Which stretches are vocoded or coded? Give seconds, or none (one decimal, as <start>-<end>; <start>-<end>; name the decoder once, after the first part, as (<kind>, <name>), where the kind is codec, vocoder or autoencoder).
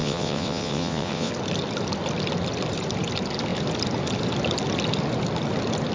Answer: 0.0-1.3 (vocoder, WaveNeXt)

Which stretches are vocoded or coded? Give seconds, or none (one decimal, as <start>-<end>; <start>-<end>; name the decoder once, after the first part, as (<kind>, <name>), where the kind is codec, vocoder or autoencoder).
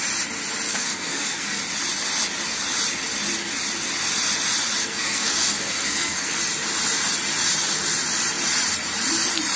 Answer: 0.7-1.6 (codec, SNAC); 4.8-6.4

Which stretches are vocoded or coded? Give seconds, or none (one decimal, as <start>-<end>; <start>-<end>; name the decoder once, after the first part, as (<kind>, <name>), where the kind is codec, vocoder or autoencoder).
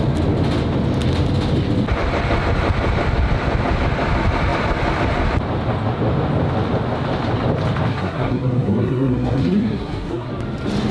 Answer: 7.9-10.3 (codec, SNAC)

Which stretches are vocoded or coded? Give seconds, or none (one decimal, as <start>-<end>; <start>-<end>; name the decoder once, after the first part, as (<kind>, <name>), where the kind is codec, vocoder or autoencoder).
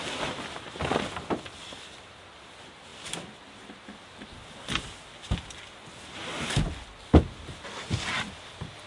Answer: none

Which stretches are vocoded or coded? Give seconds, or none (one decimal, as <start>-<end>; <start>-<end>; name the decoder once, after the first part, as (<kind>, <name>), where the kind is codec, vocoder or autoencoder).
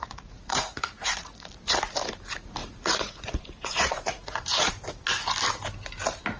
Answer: 0.0-1.5 (vocoder, Vocos); 2.6-4.7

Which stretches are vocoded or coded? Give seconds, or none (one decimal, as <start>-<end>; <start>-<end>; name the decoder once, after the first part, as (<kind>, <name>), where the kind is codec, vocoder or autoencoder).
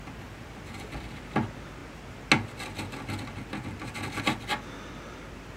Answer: none